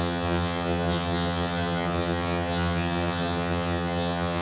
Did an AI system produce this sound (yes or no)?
yes